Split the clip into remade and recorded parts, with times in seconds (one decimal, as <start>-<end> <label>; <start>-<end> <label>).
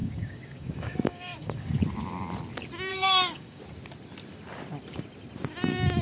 0.0-1.7 remade; 1.7-2.9 recorded; 2.9-3.6 remade; 3.6-6.0 recorded